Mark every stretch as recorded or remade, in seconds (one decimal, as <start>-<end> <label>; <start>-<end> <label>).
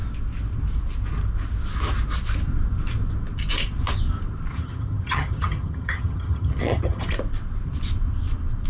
0.0-4.5 recorded; 4.5-7.1 remade; 7.1-8.7 recorded